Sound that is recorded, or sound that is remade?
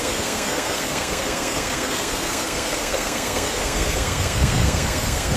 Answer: remade